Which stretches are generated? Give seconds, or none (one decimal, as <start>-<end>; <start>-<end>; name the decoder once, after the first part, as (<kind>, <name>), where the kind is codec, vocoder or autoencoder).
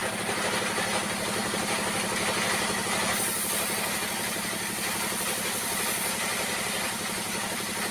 0.5-1.4 (vocoder, BigVGAN v2); 3.9-7.9